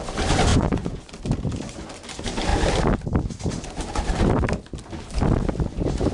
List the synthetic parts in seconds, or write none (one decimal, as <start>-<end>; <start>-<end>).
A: 0.5-1.1